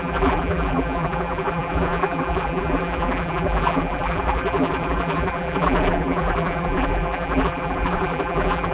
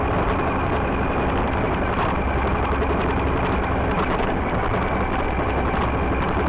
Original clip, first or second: second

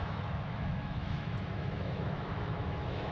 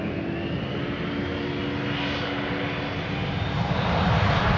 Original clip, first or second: second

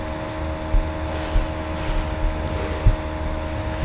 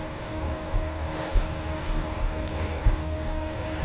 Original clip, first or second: first